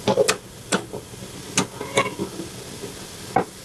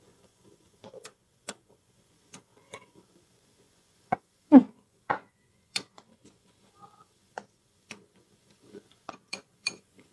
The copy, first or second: second